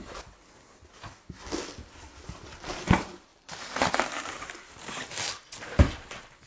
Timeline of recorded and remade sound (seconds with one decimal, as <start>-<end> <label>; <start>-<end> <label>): 0.0-3.3 recorded; 3.3-4.6 remade; 4.6-6.5 recorded